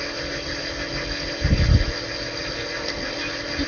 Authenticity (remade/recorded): recorded